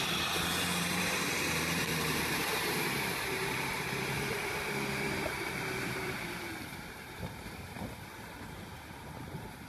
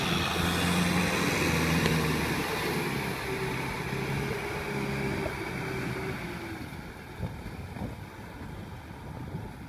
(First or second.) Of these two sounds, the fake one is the first